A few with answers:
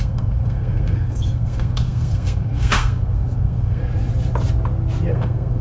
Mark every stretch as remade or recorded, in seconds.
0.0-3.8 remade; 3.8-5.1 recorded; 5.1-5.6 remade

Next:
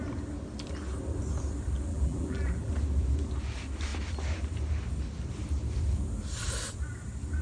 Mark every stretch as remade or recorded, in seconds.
0.0-1.9 recorded; 1.9-2.7 remade; 2.7-7.4 recorded

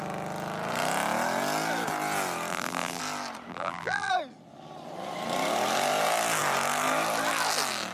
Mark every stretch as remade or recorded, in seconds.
0.0-2.5 recorded; 2.5-3.0 remade; 3.0-3.5 recorded; 3.5-4.1 remade; 4.1-7.9 recorded

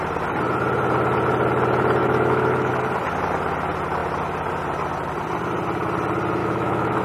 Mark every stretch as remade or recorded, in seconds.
0.0-2.0 recorded; 2.0-2.7 remade; 2.7-6.4 recorded; 6.4-7.0 remade

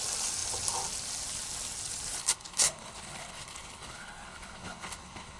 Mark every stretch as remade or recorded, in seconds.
0.0-2.2 recorded; 2.2-5.4 remade

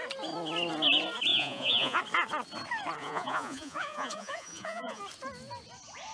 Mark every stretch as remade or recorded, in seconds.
0.0-1.3 recorded; 1.3-2.0 remade; 2.0-3.0 recorded; 3.0-5.0 remade; 5.0-6.1 recorded